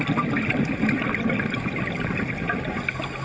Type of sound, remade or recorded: recorded